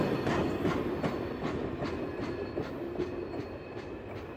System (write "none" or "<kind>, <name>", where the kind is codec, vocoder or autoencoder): none